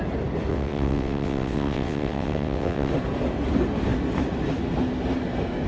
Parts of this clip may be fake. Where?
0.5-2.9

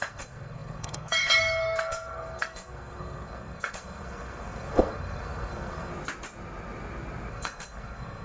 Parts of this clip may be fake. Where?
0.0-5.9; 7.3-8.2

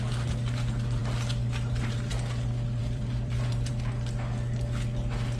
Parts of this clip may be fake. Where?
2.8-3.7

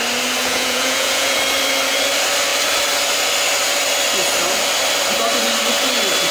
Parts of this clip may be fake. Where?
0.4-1.4

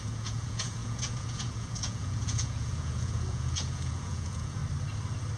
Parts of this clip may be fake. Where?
0.0-4.6